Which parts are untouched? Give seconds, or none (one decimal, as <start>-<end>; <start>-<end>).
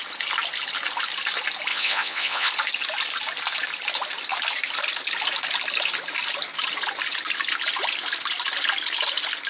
0.0-1.7; 2.5-9.5